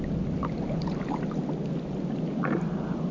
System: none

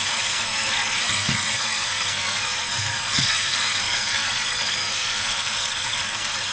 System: codec, SNAC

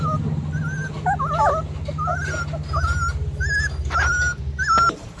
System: none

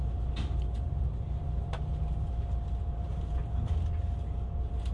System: none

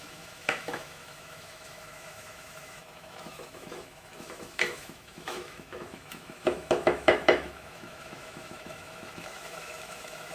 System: autoencoder, DAC-VAE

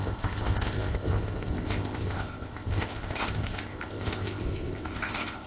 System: codec, ZipCodec